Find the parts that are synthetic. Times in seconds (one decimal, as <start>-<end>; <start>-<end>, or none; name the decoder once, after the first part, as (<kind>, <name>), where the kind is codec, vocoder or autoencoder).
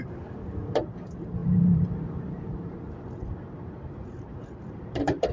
0.0-5.3 (vocoder, BigVGAN v2)